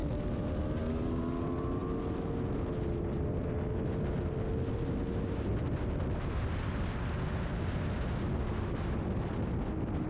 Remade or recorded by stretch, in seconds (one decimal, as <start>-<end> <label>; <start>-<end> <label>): 0.0-10.1 recorded